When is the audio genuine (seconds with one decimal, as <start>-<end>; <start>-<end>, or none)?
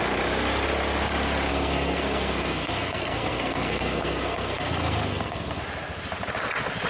0.0-1.5; 5.6-6.9